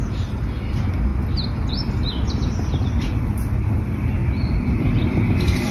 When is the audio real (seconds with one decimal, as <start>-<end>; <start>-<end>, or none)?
0.0-1.1; 1.7-4.2